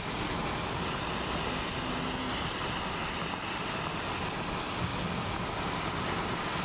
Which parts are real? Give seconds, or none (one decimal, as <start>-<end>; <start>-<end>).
0.0-6.6